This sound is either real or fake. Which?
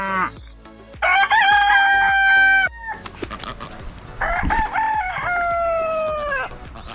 real